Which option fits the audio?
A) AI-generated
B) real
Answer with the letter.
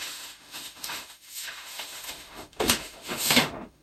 A